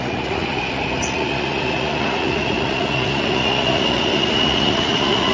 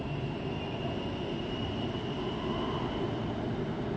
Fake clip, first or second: first